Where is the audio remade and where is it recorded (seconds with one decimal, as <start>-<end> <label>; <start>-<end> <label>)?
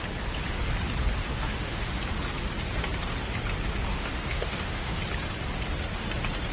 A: 0.0-1.2 recorded; 1.2-2.0 remade; 2.0-3.9 recorded; 3.9-5.0 remade; 5.0-6.5 recorded